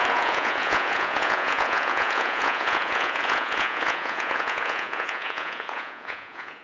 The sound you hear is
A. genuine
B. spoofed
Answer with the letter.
B